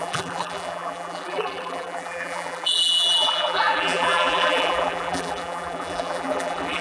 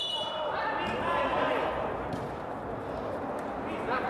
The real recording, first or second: second